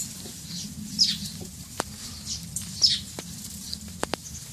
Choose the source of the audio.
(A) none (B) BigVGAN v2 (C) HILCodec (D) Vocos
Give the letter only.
A